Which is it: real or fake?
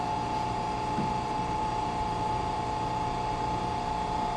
fake